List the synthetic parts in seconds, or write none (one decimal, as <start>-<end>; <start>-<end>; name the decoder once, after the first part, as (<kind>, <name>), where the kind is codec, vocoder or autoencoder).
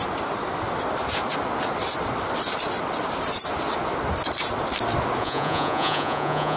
5.2-6.6 (vocoder, Vocos)